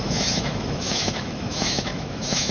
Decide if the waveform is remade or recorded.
remade